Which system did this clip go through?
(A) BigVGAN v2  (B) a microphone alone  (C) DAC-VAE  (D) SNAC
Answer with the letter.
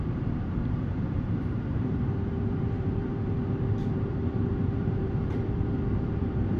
A